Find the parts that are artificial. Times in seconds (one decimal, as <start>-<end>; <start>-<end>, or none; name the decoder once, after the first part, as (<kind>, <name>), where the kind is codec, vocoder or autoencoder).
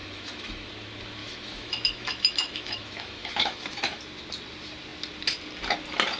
0.0-0.7 (autoencoder, DAC-VAE); 1.2-4.0